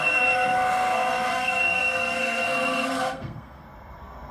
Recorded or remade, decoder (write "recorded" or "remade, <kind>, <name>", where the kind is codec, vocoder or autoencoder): remade, codec, SNAC